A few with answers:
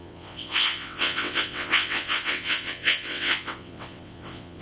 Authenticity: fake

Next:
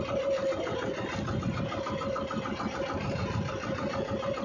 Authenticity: real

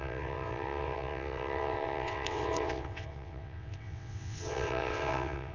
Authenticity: fake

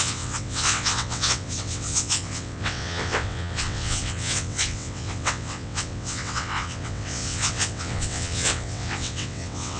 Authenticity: fake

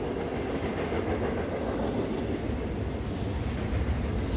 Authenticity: real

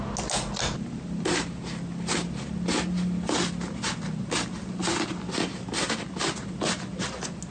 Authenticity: real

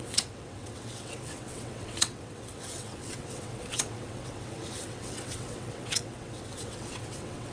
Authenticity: fake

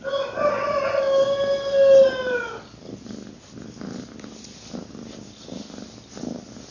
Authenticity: real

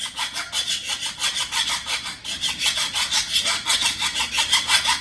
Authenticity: real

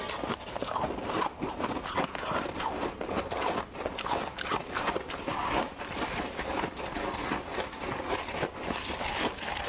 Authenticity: real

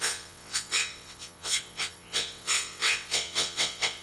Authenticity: fake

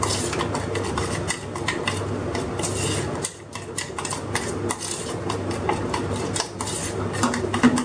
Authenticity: real